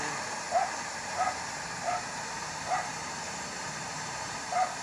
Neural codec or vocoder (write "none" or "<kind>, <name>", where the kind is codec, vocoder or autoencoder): vocoder, BigVGAN v2